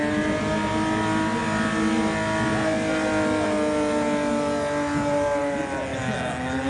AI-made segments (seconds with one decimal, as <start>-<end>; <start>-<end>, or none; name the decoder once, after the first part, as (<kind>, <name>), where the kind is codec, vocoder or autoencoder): none